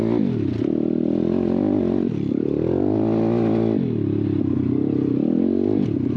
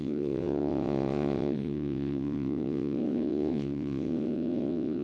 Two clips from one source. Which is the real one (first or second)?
first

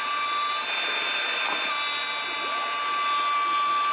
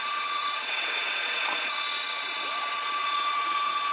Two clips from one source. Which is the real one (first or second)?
first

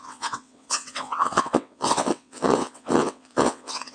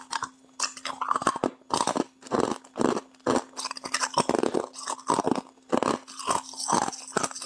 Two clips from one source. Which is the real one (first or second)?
second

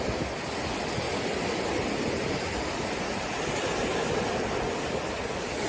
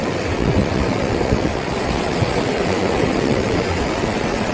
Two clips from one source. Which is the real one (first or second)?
first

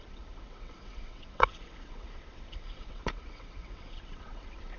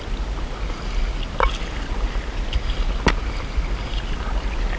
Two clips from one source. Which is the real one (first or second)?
second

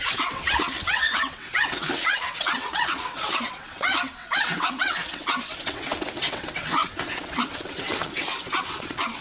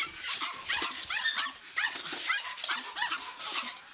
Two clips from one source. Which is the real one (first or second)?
second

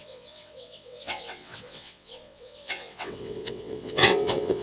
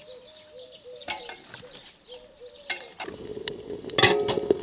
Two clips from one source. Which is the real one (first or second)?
second